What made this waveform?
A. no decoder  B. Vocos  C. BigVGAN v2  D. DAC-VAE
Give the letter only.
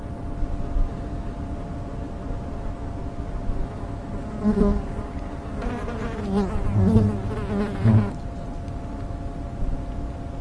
A